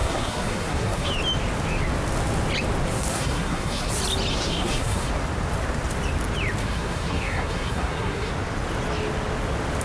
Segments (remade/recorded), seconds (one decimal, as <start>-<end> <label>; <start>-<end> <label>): 0.0-1.1 remade; 1.1-3.1 recorded; 3.1-3.9 remade; 3.9-4.3 recorded; 4.3-5.1 remade; 5.1-6.6 recorded; 6.6-8.3 remade; 8.3-9.8 recorded

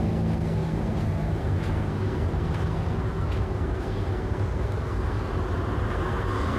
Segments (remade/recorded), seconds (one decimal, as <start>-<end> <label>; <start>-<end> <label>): 0.0-5.3 remade; 5.3-5.9 recorded; 5.9-6.6 remade

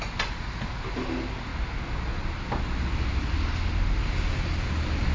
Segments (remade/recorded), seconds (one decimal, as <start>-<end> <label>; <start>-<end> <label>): 0.0-5.1 recorded

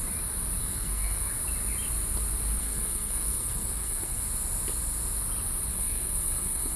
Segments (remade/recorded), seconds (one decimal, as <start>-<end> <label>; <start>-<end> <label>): 0.0-0.6 recorded; 0.6-1.3 remade; 1.3-2.6 recorded; 2.6-4.2 remade; 4.2-5.7 recorded; 5.7-6.8 remade

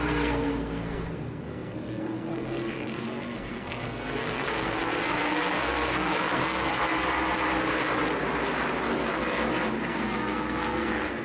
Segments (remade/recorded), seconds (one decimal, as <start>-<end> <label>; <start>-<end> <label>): 0.0-6.7 remade; 6.7-9.8 recorded; 9.8-11.2 remade

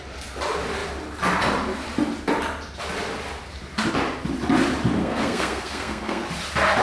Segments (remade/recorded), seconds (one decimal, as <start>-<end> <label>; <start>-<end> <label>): 0.0-5.0 recorded; 5.0-6.2 remade; 6.2-6.8 recorded